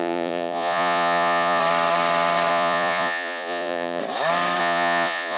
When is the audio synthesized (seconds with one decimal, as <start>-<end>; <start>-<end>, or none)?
0.0-1.6; 2.5-4.0; 4.6-5.4